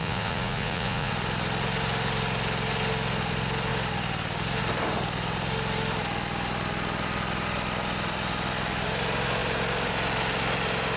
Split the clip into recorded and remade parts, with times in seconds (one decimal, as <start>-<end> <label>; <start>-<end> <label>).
0.0-1.1 remade; 1.1-11.0 recorded